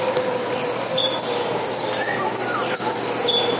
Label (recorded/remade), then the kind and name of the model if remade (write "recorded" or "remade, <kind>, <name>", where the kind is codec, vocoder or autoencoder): recorded